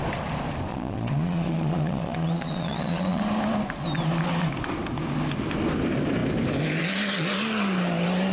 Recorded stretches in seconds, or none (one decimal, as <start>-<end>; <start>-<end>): 0.0-0.7; 3.2-8.3